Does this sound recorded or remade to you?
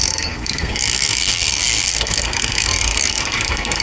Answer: remade